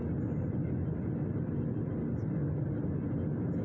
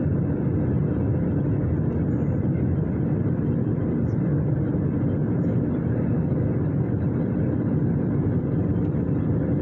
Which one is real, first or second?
first